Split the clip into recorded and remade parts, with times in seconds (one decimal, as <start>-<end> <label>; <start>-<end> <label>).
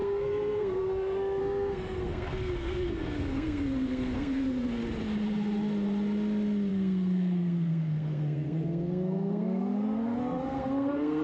0.0-4.8 remade; 4.8-6.7 recorded; 6.7-11.2 remade